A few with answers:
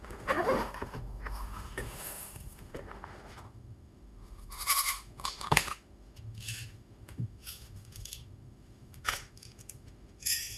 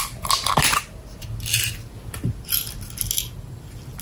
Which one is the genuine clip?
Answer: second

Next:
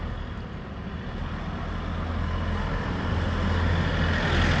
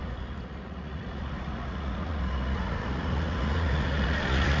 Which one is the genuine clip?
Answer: first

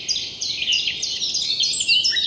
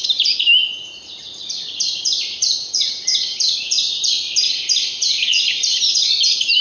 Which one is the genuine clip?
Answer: first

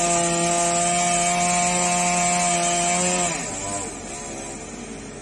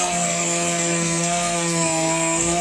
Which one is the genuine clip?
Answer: first